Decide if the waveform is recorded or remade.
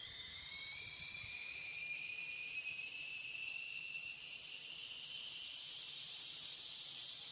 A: remade